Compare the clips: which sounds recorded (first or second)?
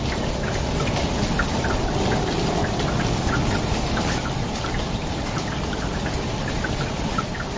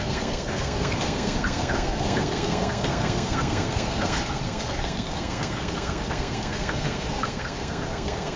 first